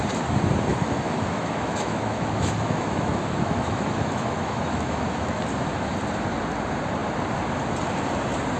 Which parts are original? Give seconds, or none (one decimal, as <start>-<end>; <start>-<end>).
0.0-0.7; 5.4-8.6